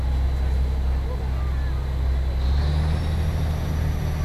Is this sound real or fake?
real